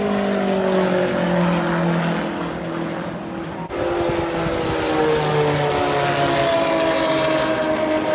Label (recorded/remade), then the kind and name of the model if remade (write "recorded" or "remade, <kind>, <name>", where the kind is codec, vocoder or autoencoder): recorded